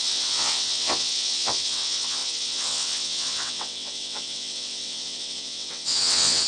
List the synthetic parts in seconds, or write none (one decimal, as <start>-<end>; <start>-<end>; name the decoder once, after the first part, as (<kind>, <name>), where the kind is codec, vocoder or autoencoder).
0.0-6.5 (vocoder, WaveNeXt)